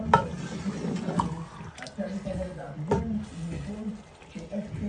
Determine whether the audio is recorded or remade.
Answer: recorded